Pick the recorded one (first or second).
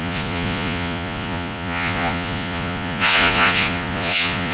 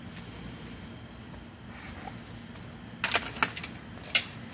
second